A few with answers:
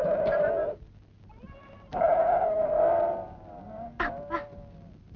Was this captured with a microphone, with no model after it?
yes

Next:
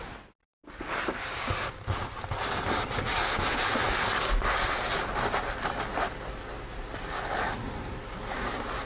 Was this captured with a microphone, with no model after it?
yes